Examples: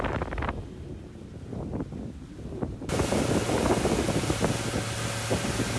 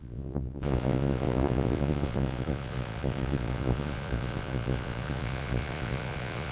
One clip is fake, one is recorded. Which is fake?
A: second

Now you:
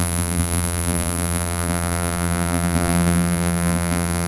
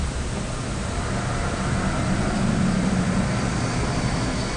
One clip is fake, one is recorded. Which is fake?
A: first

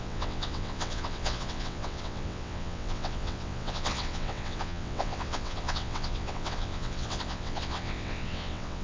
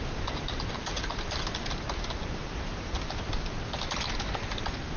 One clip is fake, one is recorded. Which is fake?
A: first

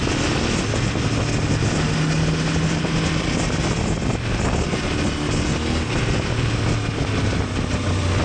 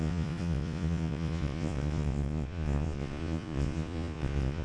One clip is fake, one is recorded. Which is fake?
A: second